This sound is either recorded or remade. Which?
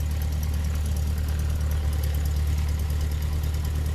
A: recorded